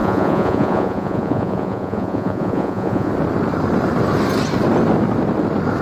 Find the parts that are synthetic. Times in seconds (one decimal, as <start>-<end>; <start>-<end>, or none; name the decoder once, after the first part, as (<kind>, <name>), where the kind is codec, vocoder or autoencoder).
0.0-3.1 (vocoder, Vocos)